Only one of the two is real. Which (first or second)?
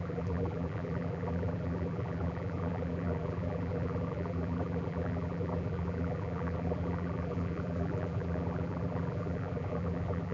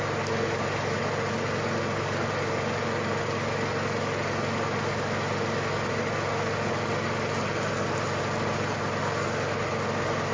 second